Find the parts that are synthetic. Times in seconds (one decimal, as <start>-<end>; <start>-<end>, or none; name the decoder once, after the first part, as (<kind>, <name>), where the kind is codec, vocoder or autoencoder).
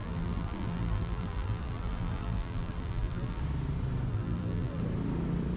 0.0-3.4 (vocoder, BigVGAN v2); 4.1-4.8